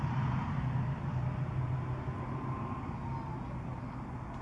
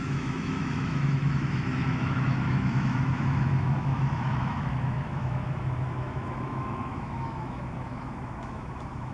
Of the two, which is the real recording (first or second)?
first